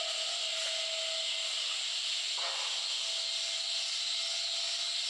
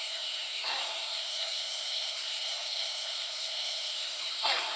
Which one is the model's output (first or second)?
second